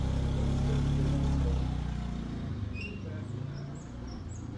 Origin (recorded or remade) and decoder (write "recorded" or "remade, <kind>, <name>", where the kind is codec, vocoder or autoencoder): recorded